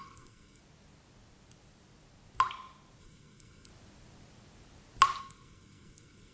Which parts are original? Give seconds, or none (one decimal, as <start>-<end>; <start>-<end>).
0.6-3.0; 3.7-5.2